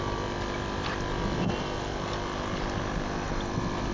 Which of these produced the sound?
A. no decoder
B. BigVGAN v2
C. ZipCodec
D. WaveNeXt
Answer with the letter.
A